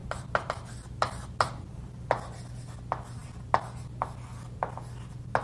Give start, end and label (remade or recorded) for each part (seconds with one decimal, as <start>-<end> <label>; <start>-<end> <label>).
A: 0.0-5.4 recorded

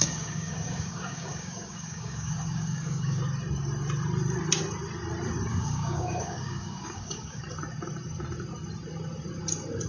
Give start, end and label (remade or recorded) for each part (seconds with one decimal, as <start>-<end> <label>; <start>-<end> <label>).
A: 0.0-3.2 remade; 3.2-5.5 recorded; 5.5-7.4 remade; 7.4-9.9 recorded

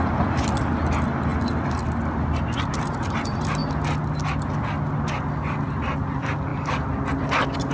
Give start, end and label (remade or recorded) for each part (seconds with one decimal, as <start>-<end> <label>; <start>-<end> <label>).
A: 0.0-7.7 recorded

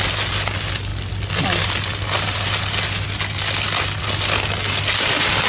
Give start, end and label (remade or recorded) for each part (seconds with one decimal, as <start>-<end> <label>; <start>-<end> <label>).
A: 0.0-5.5 recorded

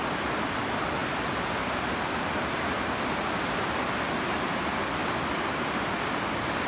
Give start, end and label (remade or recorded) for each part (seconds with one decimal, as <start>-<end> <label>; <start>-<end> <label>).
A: 0.0-6.7 recorded

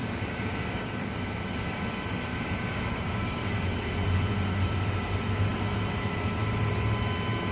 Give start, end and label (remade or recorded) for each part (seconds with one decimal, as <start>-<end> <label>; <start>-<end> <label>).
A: 0.0-1.2 remade; 1.2-2.3 recorded; 2.3-3.5 remade; 3.5-7.5 recorded

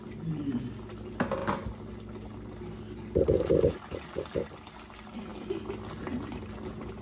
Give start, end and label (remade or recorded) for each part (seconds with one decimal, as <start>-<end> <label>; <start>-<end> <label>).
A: 0.0-7.0 recorded